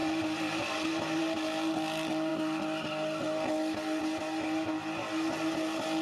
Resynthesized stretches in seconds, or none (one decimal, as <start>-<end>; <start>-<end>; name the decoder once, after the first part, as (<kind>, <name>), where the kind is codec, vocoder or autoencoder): 0.0-1.2 (vocoder, BigVGAN v2)